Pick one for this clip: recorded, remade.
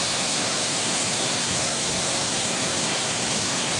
remade